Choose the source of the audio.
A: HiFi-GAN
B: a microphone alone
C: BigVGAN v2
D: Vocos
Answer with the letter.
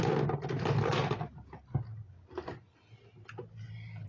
B